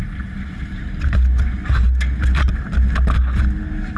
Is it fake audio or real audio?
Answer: real